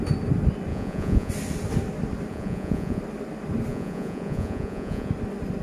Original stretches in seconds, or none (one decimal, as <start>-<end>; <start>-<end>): 0.0-0.7; 1.3-2.3; 3.0-3.7; 5.1-5.6